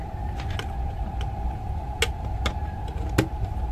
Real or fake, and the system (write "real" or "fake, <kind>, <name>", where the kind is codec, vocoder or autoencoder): real